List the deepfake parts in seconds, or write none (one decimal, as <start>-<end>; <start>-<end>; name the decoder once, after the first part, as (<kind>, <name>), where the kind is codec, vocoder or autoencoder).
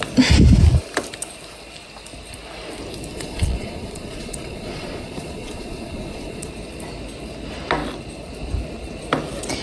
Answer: 3.1-6.5 (vocoder, Vocos)